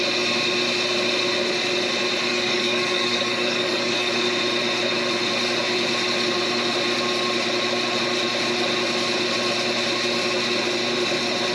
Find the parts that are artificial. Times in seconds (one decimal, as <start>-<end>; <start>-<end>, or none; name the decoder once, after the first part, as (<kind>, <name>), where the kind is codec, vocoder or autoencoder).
2.3-4.1 (codec, DAC)